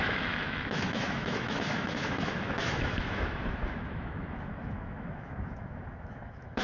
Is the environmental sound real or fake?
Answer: fake